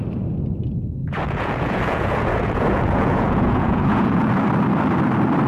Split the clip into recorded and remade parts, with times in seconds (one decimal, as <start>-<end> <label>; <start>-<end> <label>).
0.0-1.0 recorded; 1.0-4.3 remade; 4.3-5.5 recorded